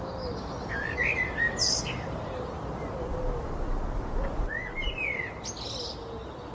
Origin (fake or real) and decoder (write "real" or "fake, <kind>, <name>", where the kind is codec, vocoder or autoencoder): real